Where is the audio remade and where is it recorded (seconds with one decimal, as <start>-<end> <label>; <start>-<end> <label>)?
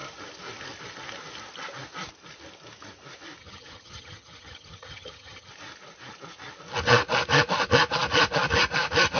0.0-3.4 recorded; 3.4-5.5 remade; 5.5-9.2 recorded